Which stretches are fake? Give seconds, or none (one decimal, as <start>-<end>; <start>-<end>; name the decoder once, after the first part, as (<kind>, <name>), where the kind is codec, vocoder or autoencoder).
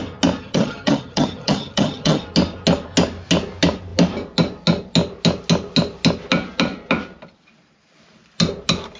0.4-2.2 (vocoder, HiFi-GAN)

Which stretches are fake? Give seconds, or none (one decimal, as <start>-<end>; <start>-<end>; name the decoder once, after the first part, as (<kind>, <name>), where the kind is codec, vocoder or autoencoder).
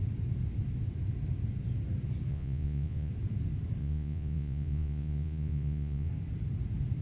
2.3-3.1 (vocoder, Vocos); 3.8-6.1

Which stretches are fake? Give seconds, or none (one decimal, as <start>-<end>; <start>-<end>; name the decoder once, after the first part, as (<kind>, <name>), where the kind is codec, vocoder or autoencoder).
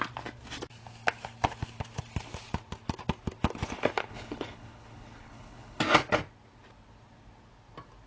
4.1-5.8 (codec, HILCodec)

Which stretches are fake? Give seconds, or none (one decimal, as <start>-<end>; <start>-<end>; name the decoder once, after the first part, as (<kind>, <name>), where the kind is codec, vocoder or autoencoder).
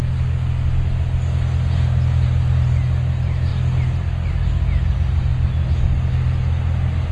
none